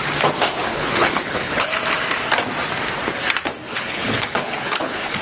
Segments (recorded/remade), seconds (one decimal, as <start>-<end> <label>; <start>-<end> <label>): 0.0-0.7 recorded; 0.7-1.7 remade; 1.7-3.6 recorded; 3.6-5.2 remade

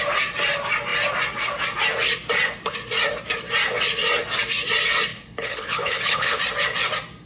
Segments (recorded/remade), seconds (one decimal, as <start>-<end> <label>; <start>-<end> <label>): 0.0-5.1 recorded; 5.1-6.4 remade; 6.4-7.3 recorded

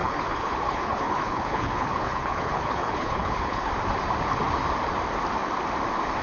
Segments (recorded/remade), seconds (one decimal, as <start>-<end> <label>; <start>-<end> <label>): 0.0-3.7 remade; 3.7-6.2 recorded

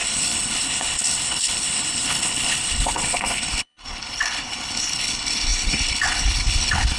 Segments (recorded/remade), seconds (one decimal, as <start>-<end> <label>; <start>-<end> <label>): 0.0-7.0 remade

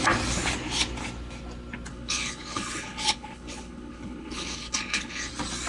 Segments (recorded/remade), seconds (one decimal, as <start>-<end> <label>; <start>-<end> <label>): 0.0-1.9 recorded; 1.9-5.3 remade; 5.3-5.7 recorded